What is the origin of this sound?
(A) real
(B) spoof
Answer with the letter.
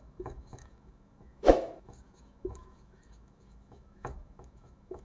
B